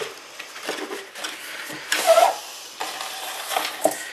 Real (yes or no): yes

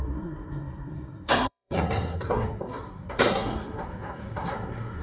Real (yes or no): no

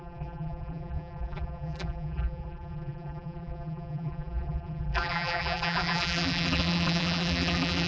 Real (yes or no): no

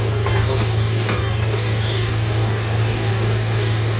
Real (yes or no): no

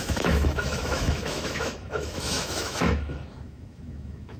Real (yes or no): no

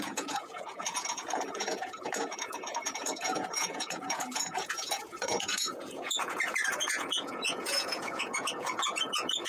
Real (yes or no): no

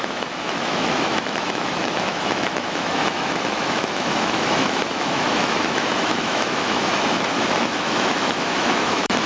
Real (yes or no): no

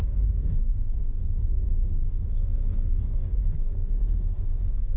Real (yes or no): no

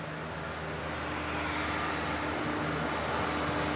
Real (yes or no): yes